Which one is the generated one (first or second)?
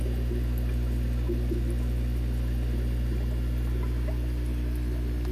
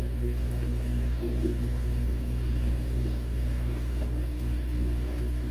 second